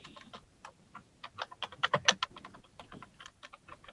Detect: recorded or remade recorded